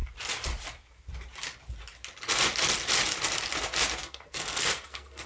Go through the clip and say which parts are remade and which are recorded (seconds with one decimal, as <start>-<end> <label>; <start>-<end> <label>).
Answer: 0.0-4.0 recorded; 4.0-5.3 remade